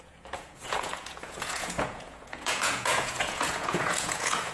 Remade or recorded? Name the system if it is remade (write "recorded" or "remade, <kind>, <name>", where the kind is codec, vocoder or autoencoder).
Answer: remade, vocoder, Vocos